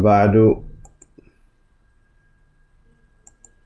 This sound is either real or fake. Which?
real